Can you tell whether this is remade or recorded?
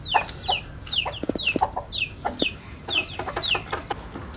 recorded